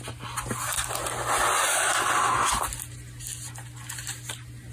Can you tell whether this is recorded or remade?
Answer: recorded